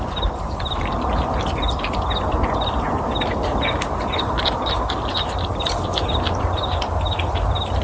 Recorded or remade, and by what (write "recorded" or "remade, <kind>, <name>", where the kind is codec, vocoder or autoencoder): recorded